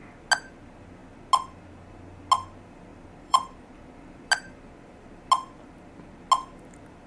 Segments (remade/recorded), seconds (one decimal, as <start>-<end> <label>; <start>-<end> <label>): 0.0-2.9 recorded; 2.9-4.3 remade; 4.3-7.1 recorded